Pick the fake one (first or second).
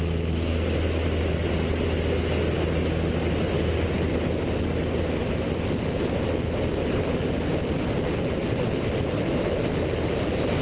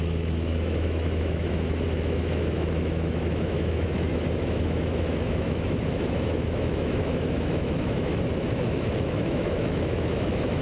second